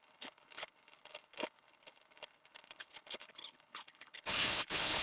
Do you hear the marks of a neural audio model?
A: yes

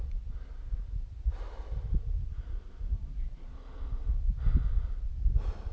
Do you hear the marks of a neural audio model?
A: no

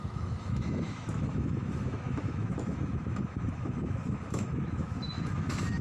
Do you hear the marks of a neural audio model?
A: yes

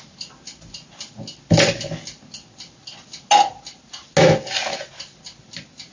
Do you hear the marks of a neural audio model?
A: no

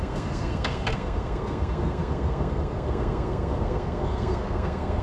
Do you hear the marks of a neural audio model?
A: yes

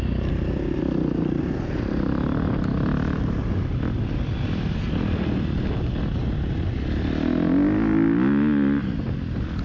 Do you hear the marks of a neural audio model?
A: no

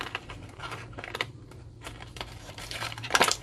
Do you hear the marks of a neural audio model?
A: yes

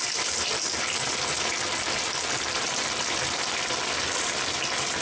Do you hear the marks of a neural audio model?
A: no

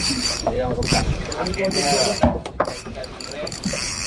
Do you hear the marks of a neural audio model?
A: yes